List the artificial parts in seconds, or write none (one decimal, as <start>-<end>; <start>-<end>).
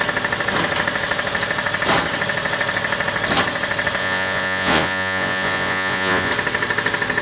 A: 4.0-6.3